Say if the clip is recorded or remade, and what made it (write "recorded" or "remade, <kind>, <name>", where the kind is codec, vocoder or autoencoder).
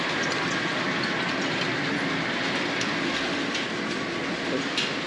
recorded